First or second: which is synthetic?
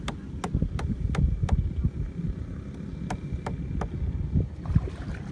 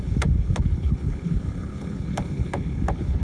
second